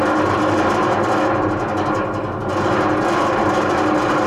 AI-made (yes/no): no